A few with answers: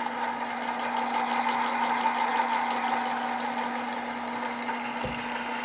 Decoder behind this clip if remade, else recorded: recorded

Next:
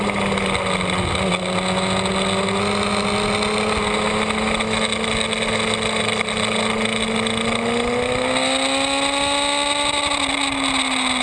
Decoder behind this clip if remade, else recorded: recorded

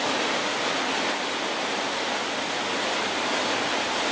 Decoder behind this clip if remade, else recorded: recorded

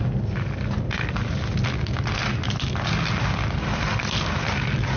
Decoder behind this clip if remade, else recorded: recorded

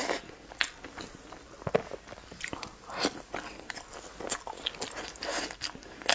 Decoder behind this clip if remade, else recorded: recorded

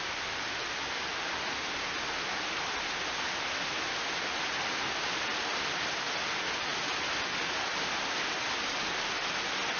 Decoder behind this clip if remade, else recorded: recorded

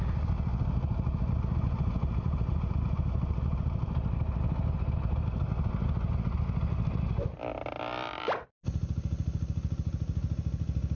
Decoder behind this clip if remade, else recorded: recorded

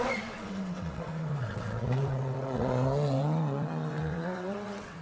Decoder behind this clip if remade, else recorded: remade, vocoder, WaveNeXt